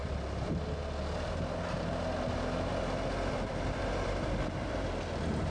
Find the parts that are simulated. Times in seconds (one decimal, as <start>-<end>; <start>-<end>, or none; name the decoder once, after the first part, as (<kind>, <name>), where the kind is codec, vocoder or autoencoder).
3.3-5.5 (vocoder, BigVGAN v2)